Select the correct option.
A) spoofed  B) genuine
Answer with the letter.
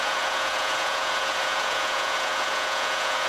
A